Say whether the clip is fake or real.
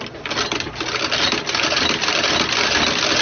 real